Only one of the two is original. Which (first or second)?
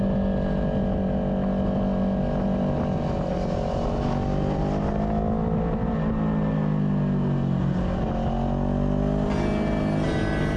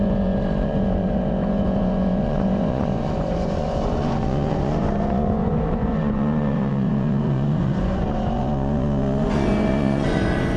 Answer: first